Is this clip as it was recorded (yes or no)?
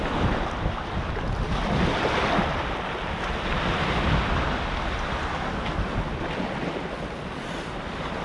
yes